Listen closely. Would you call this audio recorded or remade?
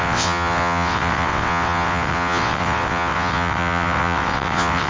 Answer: remade